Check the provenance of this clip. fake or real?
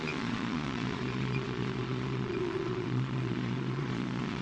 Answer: fake